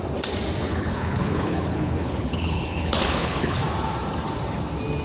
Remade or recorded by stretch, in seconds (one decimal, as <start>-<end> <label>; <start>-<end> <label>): 0.0-0.6 recorded; 0.6-3.6 remade; 3.6-5.0 recorded

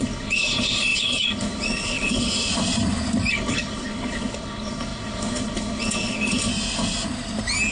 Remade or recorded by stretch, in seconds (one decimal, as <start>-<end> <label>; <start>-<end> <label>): 0.0-2.5 remade; 2.5-3.3 recorded; 3.3-6.5 remade; 6.5-7.7 recorded